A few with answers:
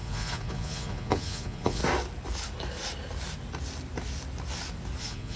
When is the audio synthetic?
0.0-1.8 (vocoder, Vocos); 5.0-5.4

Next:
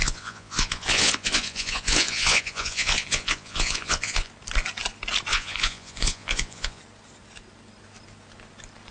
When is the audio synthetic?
0.0-4.3 (vocoder, Vocos); 5.3-6.8

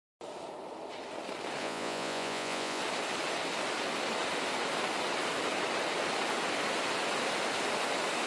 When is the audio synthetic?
1.6-2.8 (vocoder, Vocos)

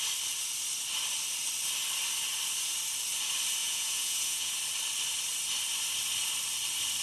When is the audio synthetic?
3.6-4.5 (vocoder, Vocos)

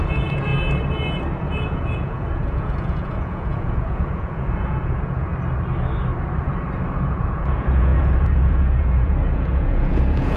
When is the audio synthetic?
0.0-0.5 (vocoder, Vocos); 1.4-5.3; 6.9-10.4